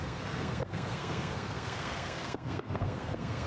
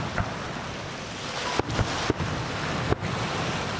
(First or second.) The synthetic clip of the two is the first